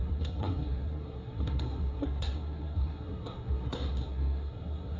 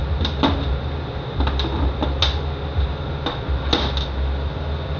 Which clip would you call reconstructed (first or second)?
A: first